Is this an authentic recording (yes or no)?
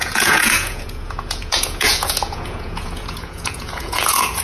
no